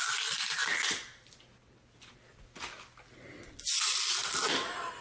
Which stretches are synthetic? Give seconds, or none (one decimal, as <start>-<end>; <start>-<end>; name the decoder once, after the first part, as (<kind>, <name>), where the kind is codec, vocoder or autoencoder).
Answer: none